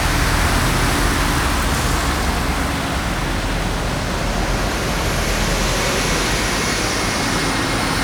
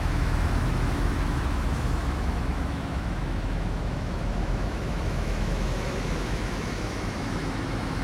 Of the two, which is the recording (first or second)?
first